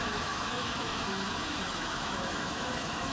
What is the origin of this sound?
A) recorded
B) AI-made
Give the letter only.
B